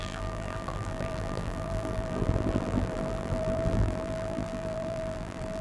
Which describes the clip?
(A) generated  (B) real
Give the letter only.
A